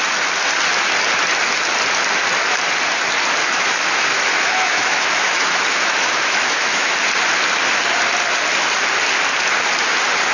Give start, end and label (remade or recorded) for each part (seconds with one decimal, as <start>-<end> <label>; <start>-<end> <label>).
0.0-3.4 recorded; 3.4-6.9 remade; 6.9-10.3 recorded